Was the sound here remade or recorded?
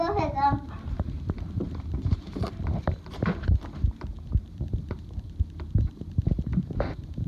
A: remade